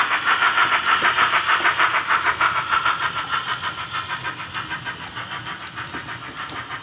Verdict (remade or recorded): recorded